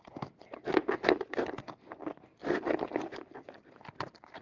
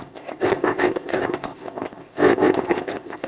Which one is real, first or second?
first